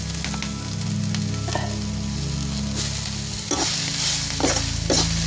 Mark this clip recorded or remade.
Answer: recorded